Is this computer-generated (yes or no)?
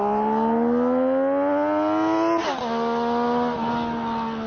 no